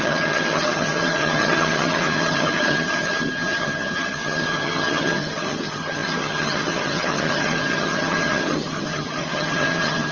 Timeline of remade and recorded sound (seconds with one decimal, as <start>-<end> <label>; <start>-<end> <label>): 0.0-10.1 remade